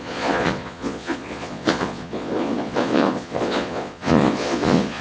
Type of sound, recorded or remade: remade